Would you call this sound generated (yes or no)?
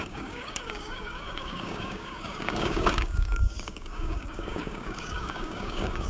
yes